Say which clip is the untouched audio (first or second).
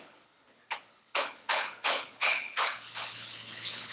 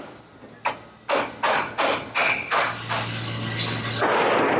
second